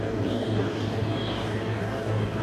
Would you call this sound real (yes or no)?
no